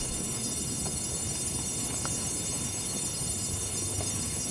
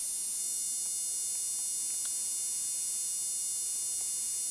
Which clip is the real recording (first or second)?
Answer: second